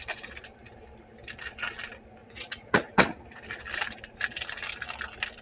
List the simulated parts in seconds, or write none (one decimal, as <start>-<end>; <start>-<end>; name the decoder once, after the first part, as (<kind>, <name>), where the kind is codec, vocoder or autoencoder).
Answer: 2.2-3.4 (vocoder, Vocos)